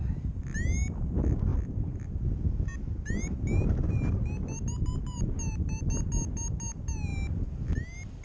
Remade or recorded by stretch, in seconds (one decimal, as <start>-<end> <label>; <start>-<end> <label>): 0.0-8.2 recorded